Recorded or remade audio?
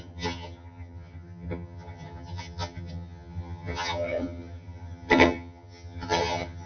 remade